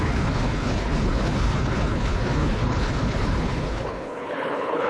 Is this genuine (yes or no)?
no